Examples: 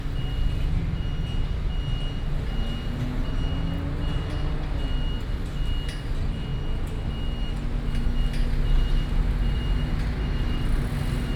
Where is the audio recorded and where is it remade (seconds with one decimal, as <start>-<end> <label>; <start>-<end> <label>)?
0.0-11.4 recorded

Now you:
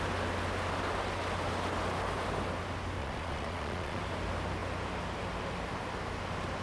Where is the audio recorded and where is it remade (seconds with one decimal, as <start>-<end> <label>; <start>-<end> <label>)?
0.0-3.0 recorded; 3.0-4.0 remade; 4.0-6.6 recorded

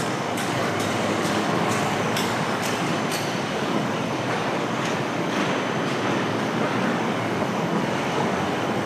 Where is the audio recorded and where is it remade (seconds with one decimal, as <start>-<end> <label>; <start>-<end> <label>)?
0.0-2.9 remade; 2.9-3.4 recorded; 3.4-5.4 remade; 5.4-6.1 recorded; 6.1-8.9 remade

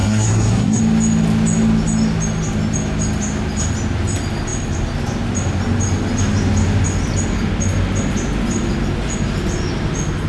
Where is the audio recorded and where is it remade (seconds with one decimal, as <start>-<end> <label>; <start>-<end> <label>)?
0.0-0.8 remade; 0.8-10.3 recorded

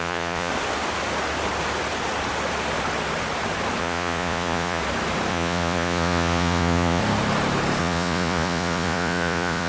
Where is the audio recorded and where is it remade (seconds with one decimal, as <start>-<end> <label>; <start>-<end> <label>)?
0.0-0.5 remade; 0.5-3.8 recorded; 3.8-4.8 remade; 4.8-5.3 recorded; 5.3-7.0 remade; 7.0-7.8 recorded; 7.8-9.7 remade